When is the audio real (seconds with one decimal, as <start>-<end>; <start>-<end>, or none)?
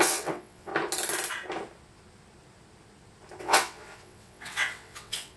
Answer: 0.7-3.4